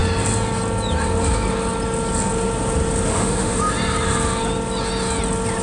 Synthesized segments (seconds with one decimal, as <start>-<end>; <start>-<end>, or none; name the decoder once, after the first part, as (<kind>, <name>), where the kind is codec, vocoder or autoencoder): 3.1-3.6 (autoencoder, DAC-VAE)